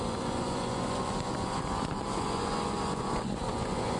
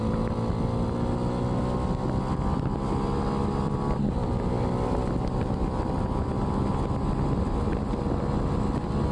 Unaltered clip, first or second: second